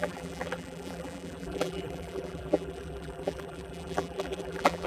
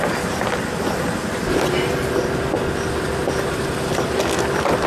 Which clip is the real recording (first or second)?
second